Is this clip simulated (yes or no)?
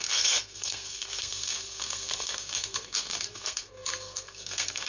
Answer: yes